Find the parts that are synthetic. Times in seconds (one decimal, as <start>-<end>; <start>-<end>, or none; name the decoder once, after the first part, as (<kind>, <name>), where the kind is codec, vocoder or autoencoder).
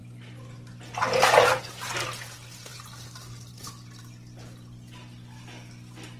none